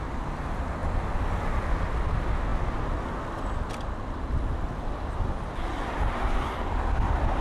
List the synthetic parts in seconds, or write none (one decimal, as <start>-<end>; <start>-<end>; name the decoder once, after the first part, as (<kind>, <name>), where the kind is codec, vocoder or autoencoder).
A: none